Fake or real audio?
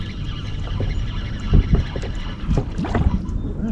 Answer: real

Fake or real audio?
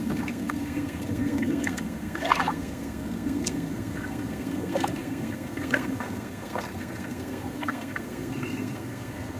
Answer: fake